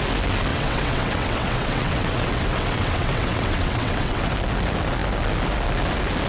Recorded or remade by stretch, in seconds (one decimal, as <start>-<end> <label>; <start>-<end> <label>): 0.0-0.5 recorded; 0.5-4.3 remade; 4.3-6.3 recorded

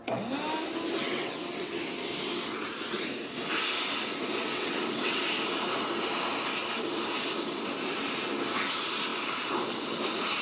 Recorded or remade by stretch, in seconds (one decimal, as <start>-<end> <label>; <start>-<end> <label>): 0.0-1.0 recorded; 1.0-1.7 remade; 1.7-4.4 recorded; 4.4-5.2 remade; 5.2-10.4 recorded

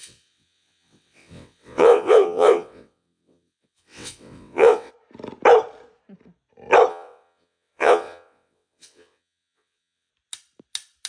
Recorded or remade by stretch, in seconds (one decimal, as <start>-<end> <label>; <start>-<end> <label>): 0.0-4.9 remade; 4.9-6.9 recorded; 6.9-10.1 remade; 10.1-11.1 recorded

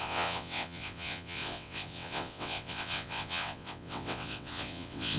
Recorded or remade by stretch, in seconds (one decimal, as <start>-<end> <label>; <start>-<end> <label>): 0.0-5.2 remade

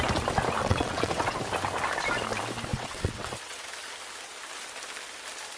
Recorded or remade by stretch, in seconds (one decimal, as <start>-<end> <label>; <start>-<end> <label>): 0.0-0.6 recorded; 0.6-1.4 remade; 1.4-2.7 recorded; 2.7-3.7 remade; 3.7-5.6 recorded